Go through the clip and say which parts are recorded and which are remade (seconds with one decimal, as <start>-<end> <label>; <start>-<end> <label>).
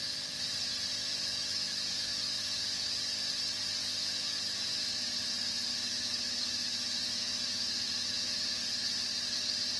0.0-0.9 recorded; 0.9-3.0 remade; 3.0-3.8 recorded; 3.8-4.8 remade; 4.8-5.7 recorded; 5.7-8.6 remade; 8.6-9.8 recorded